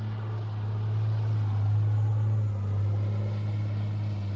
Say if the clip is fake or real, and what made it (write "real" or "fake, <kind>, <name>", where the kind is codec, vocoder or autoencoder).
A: real